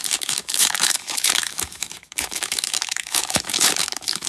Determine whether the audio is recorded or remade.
remade